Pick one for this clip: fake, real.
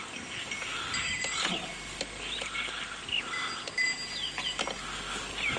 real